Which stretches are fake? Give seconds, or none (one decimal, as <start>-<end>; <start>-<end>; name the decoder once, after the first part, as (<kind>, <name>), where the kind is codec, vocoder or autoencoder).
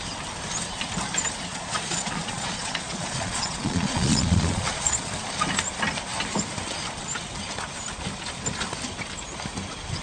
1.5-5.1 (vocoder, Vocos)